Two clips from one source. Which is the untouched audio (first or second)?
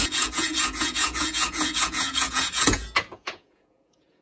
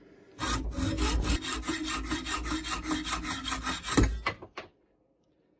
second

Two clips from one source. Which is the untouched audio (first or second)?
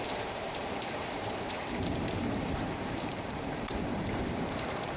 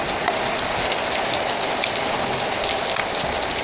second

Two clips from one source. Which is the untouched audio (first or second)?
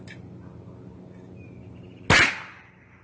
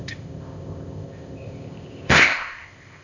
first